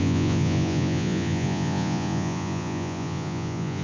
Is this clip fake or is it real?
fake